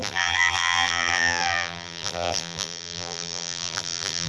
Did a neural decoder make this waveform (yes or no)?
yes